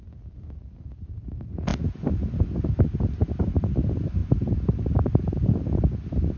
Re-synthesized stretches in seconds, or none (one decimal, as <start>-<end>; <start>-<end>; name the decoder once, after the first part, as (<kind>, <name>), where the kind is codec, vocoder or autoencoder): none